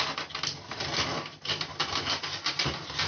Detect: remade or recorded remade